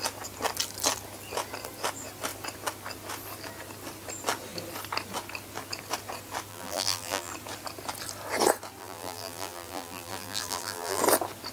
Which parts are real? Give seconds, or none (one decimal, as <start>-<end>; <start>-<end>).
0.0-6.5; 7.3-8.8; 11.0-11.5